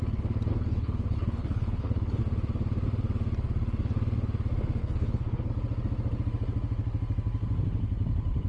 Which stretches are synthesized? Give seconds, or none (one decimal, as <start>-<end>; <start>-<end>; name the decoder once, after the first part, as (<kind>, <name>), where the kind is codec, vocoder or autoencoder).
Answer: 0.5-2.2 (codec, HILCodec); 4.8-5.5